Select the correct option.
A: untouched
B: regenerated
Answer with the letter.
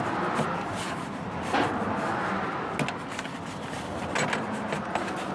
A